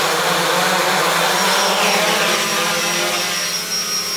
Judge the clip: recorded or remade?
recorded